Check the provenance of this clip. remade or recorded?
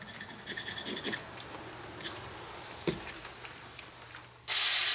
recorded